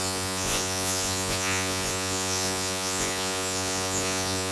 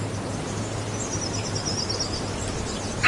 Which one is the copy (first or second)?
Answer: first